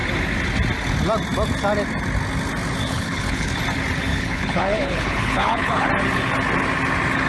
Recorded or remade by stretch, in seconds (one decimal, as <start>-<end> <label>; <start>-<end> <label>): 0.0-2.9 recorded; 2.9-3.5 remade; 3.5-4.1 recorded; 4.1-5.9 remade; 5.9-7.3 recorded